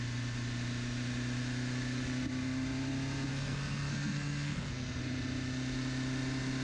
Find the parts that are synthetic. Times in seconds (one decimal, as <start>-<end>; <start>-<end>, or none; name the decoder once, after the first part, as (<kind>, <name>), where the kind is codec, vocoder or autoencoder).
3.3-5.0 (codec, SNAC)